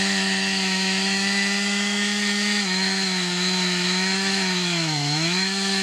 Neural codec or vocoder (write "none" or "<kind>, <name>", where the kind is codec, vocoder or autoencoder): autoencoder, DAC-VAE